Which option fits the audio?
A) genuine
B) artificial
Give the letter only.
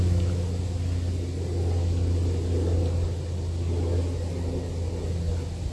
A